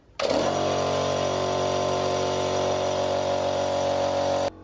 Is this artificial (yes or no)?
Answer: no